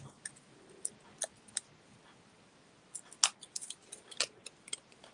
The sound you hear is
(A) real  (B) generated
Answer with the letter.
A